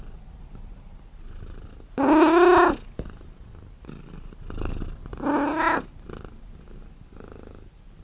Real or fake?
real